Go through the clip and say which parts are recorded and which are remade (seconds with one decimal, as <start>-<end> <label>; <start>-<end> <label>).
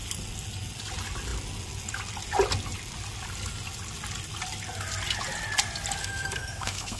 0.0-6.0 recorded; 6.0-7.0 remade